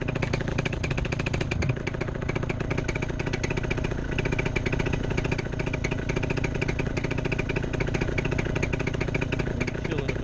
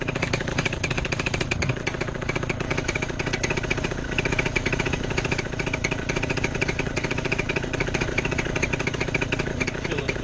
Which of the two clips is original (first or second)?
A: first